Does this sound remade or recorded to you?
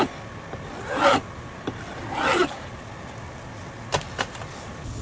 recorded